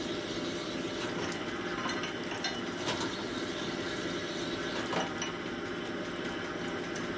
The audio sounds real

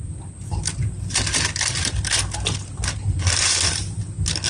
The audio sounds real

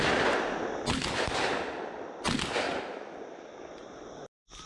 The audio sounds real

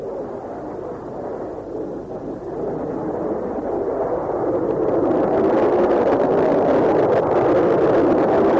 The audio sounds real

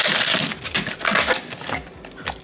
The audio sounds real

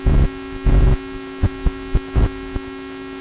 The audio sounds real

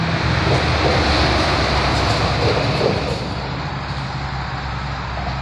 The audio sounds real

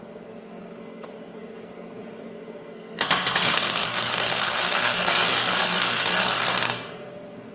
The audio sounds fake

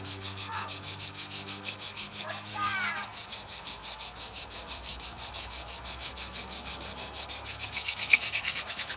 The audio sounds fake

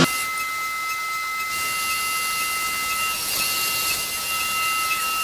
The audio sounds real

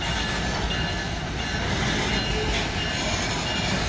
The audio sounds real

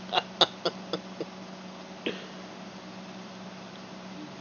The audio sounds real